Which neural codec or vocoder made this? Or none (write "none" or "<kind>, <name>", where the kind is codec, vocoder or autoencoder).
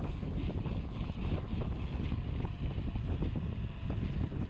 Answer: none